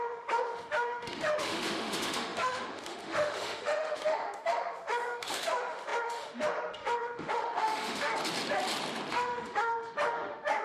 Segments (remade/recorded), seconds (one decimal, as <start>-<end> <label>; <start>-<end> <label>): 0.0-8.1 remade; 8.1-9.1 recorded; 9.1-10.6 remade